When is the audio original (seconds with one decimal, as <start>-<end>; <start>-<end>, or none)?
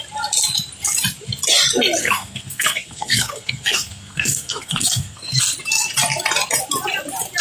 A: 0.0-2.0; 5.4-7.4